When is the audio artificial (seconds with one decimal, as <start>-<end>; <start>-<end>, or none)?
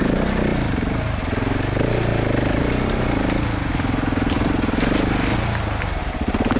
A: 0.5-1.2